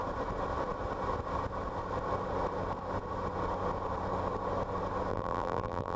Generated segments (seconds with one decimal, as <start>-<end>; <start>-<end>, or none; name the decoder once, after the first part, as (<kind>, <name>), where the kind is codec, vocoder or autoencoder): 5.1-6.0 (vocoder, BigVGAN v2)